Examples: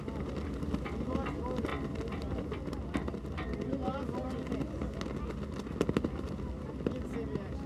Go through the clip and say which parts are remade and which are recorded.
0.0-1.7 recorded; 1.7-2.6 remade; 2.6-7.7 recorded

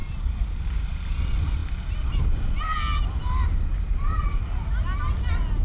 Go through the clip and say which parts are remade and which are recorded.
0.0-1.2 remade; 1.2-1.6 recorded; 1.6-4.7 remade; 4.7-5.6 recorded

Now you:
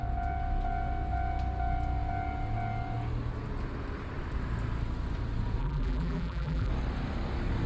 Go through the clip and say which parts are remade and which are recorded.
0.0-5.6 recorded; 5.6-6.7 remade; 6.7-7.7 recorded